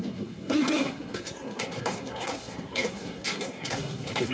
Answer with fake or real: fake